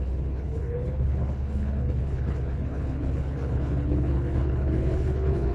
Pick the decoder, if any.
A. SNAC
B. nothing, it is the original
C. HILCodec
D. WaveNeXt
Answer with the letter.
C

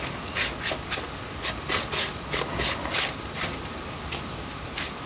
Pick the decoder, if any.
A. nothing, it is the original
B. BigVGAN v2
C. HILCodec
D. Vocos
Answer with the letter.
A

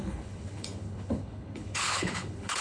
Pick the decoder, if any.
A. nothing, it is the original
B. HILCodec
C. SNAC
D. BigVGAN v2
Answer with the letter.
B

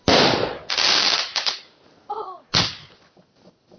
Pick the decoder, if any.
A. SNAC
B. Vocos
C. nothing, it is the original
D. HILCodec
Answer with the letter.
C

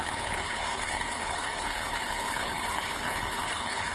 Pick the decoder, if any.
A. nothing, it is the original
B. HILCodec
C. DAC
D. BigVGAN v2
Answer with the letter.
B